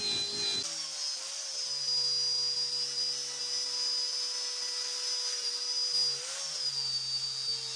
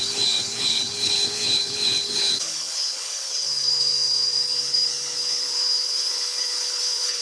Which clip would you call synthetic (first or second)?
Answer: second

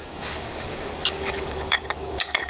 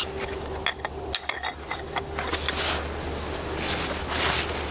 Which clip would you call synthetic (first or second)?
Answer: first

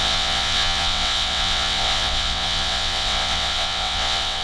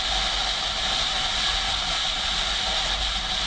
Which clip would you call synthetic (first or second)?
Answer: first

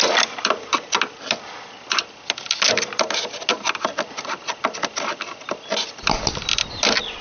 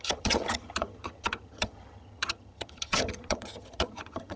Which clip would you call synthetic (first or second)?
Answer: second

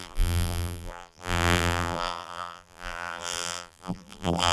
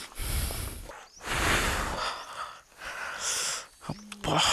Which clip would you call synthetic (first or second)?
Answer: first